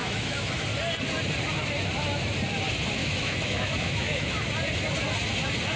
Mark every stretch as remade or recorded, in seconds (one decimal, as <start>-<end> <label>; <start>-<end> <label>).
0.0-0.5 remade; 0.5-3.0 recorded; 3.0-4.5 remade; 4.5-5.8 recorded